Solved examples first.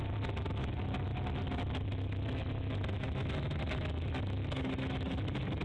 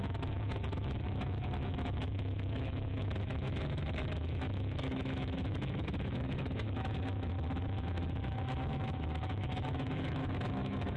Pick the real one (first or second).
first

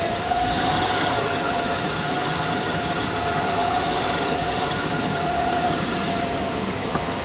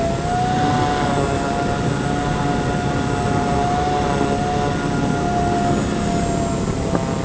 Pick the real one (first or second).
second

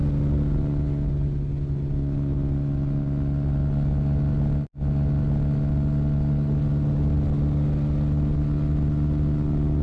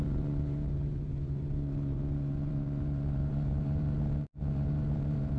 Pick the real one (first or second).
first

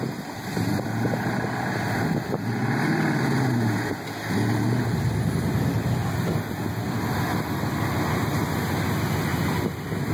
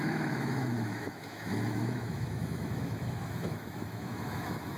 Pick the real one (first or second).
first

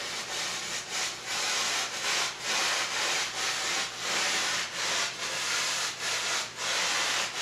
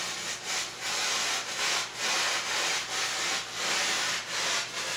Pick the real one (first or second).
second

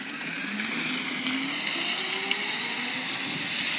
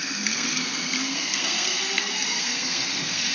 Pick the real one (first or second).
first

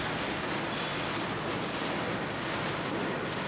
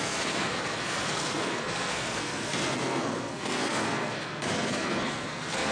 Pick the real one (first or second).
first